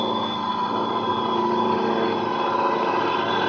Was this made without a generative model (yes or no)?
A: yes